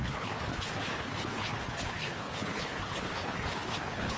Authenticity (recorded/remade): remade